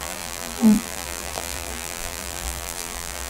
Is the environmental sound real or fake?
fake